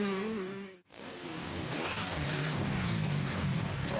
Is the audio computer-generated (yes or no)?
yes